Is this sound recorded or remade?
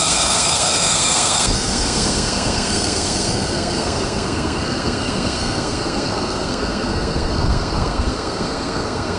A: remade